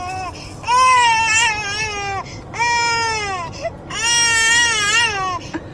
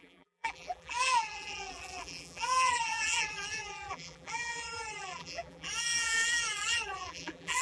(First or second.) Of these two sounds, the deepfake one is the second